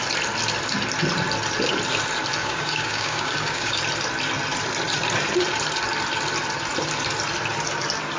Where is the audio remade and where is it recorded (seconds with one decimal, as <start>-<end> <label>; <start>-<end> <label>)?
0.0-2.4 recorded; 2.4-3.8 remade; 3.8-8.2 recorded